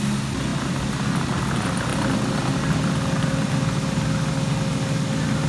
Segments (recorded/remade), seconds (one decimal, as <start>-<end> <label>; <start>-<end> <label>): 0.0-5.5 recorded

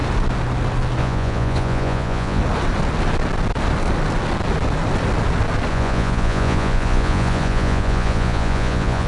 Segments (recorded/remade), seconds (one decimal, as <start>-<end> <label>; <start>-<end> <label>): 0.0-1.0 recorded; 1.0-2.4 remade; 2.4-5.7 recorded; 5.7-9.1 remade

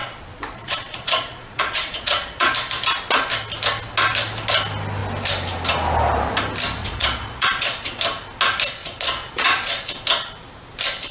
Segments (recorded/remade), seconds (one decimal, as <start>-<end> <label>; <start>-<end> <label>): 0.0-2.5 remade; 2.5-6.8 recorded; 6.8-8.0 remade; 8.0-8.8 recorded; 8.8-9.7 remade; 9.7-11.1 recorded

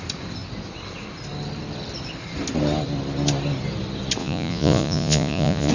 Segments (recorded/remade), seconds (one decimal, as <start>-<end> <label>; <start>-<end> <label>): 0.0-4.2 recorded; 4.2-5.7 remade

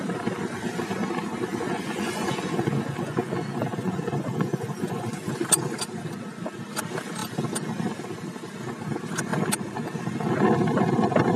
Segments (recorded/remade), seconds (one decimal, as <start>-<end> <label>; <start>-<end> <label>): 0.0-1.5 recorded; 1.5-5.3 remade; 5.3-11.4 recorded